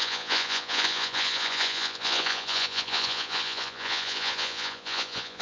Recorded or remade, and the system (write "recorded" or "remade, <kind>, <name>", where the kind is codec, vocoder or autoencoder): remade, vocoder, Vocos